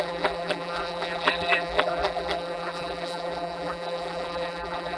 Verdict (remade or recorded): remade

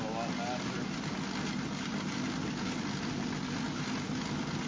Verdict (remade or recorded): recorded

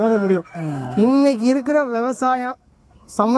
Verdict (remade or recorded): remade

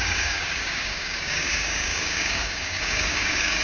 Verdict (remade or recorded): remade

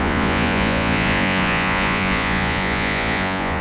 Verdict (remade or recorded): remade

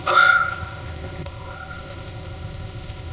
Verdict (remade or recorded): remade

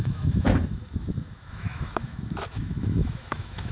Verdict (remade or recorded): remade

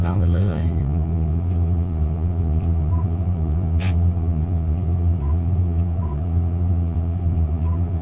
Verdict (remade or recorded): remade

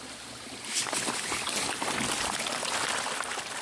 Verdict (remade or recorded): recorded